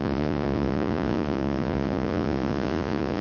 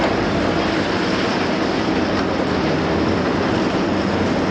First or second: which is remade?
first